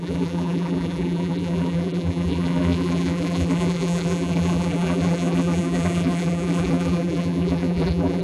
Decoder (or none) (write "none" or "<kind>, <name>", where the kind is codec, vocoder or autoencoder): vocoder, BigVGAN v2